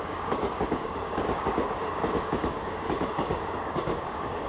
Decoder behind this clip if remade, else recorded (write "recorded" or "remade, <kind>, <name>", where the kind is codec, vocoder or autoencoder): remade, codec, DAC